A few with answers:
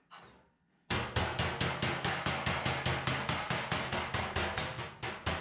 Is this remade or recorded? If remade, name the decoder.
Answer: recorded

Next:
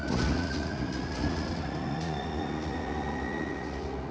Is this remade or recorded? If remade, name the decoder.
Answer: remade, vocoder, Vocos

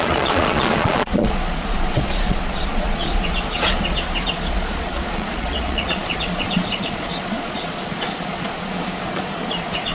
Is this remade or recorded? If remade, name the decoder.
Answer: remade, vocoder, Vocos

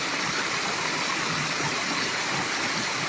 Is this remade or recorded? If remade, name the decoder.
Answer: recorded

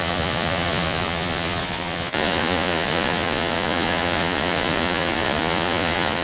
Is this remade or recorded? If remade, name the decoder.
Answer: remade, vocoder, Vocos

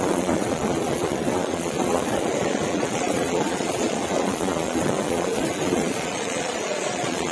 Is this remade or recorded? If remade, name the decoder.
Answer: remade, vocoder, Vocos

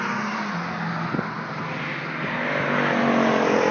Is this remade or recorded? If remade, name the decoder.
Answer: recorded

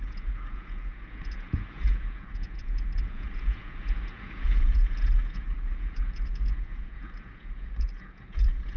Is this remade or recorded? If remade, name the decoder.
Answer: remade, vocoder, Vocos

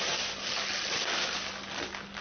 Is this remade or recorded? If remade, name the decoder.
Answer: recorded